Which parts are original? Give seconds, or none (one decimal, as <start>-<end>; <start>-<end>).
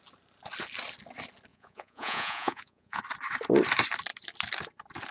0.0-1.5; 3.0-5.1